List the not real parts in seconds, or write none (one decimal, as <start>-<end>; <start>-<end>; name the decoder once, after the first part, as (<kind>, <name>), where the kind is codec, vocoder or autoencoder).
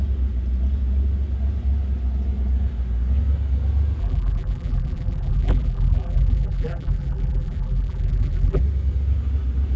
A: 4.0-8.6 (vocoder, BigVGAN v2)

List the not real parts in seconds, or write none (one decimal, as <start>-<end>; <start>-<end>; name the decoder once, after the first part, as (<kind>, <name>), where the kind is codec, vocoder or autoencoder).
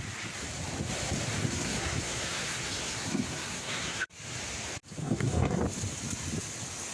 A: 1.4-4.2 (codec, SNAC); 5.0-5.6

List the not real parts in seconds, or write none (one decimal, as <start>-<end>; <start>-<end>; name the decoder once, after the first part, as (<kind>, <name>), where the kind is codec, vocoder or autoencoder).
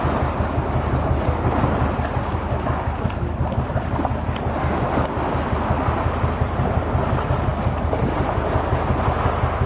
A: none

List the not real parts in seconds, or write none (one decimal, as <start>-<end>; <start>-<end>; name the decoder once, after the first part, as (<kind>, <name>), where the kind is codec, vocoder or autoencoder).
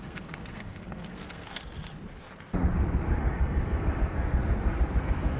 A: 0.0-1.6 (codec, SNAC); 3.2-4.4; 5.0-5.4